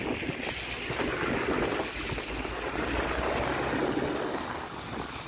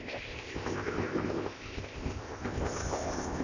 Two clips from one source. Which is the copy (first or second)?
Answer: second